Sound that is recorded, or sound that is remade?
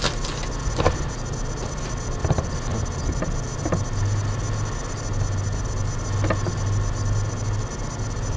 recorded